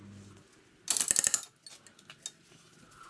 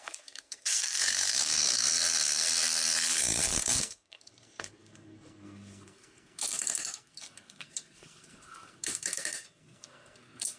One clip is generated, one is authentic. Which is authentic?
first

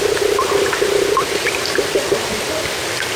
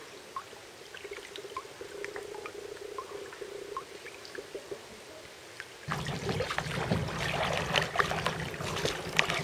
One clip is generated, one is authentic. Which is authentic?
second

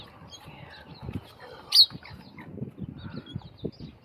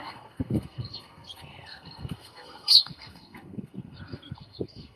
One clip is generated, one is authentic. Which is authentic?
first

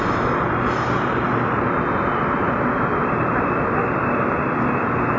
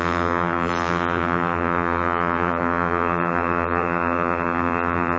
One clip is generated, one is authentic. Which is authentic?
first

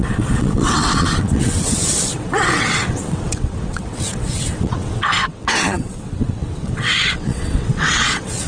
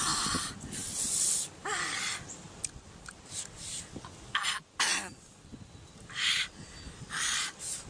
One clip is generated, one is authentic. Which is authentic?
second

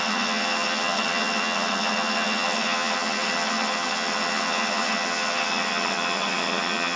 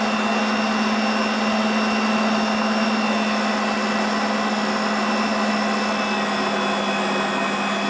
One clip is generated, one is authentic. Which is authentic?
second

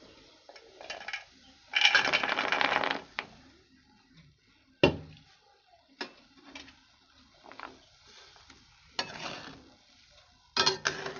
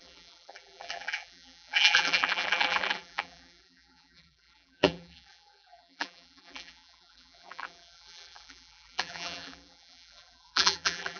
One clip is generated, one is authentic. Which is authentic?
first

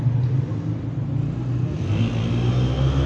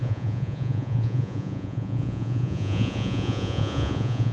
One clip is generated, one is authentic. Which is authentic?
first